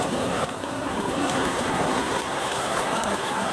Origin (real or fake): fake